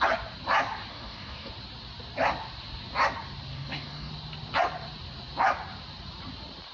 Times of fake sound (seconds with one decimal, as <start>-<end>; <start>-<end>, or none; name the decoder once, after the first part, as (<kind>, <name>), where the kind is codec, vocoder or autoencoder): 0.9-1.5 (codec, DAC); 3.5-4.1

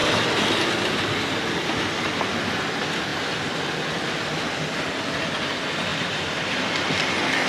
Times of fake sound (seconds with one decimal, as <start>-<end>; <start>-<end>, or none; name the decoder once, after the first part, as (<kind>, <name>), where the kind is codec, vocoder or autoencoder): 5.9-6.5 (vocoder, BigVGAN v2)

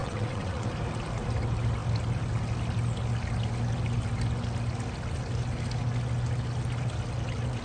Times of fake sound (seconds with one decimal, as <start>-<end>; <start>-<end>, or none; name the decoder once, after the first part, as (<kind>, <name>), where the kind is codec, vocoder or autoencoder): 0.0-0.7 (vocoder, WaveNeXt)

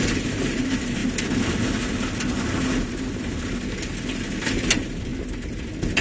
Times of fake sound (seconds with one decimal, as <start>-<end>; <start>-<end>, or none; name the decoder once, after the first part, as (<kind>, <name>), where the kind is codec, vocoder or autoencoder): 0.0-1.0 (vocoder, BigVGAN v2); 4.5-5.1

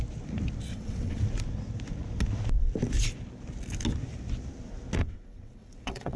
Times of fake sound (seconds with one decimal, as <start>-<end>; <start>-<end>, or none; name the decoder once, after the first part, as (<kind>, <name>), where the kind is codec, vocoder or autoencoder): 0.7-1.2 (vocoder, WaveNeXt); 5.0-6.2